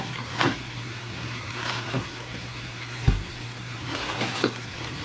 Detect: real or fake fake